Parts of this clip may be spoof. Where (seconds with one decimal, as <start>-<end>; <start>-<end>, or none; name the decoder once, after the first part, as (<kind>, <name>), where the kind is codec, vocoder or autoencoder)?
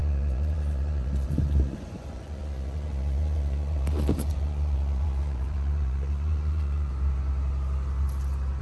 0.0-6.9 (vocoder, Vocos)